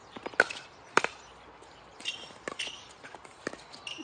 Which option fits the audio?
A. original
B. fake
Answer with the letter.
A